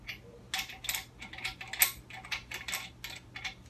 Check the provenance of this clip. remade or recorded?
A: recorded